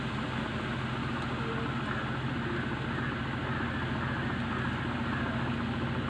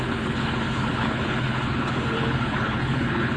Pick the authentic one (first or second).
first